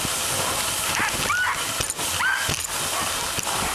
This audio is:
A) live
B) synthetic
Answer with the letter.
A